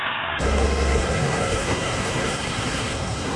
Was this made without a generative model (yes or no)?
no